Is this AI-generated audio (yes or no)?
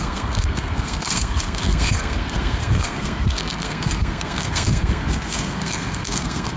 yes